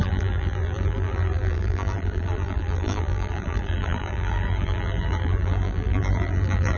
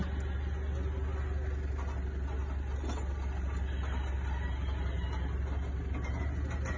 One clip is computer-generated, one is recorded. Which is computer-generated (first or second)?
first